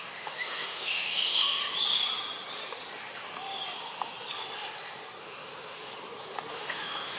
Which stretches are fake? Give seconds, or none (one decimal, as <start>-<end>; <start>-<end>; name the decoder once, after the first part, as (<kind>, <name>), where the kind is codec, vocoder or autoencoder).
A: 0.0-1.6 (autoencoder, DAC-VAE); 5.2-5.9; 6.5-7.2